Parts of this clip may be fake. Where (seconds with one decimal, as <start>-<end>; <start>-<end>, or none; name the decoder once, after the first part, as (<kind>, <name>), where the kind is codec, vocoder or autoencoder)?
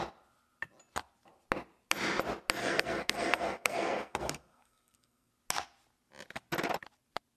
2.6-5.3 (codec, SNAC)